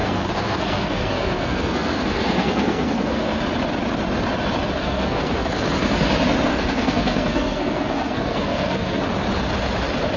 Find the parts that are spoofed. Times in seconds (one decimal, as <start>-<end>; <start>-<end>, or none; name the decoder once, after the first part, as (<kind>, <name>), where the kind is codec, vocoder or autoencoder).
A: 0.0-3.4 (codec, SNAC); 4.8-5.5; 6.5-9.0